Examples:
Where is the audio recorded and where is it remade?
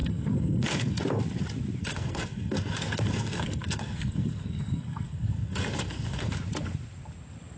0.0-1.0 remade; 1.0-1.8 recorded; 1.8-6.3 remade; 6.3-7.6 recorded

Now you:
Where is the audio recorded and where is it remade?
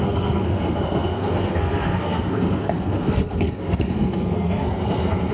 0.0-5.3 remade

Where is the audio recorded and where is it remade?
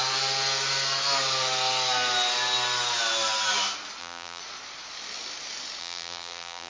0.0-4.0 recorded; 4.0-4.4 remade; 4.4-5.8 recorded; 5.8-6.7 remade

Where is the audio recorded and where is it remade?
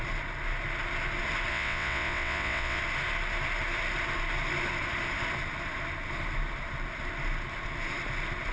0.0-1.5 recorded; 1.5-2.8 remade; 2.8-8.5 recorded